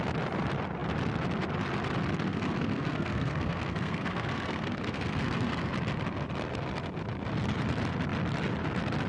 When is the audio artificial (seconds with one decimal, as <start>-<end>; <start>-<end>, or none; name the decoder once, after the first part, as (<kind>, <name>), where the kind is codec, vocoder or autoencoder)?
2.3-5.7 (codec, SNAC)